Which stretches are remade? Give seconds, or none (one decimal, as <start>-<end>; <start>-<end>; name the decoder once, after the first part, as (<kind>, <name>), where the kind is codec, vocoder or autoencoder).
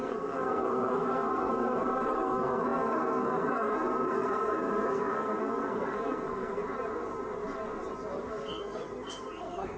0.0-6.6 (codec, SNAC); 8.3-9.8